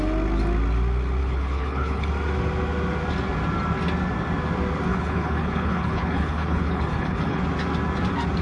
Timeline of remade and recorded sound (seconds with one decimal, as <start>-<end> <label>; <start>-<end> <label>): 0.0-1.2 recorded; 1.2-2.1 remade; 2.1-4.9 recorded; 4.9-7.4 remade; 7.4-8.4 recorded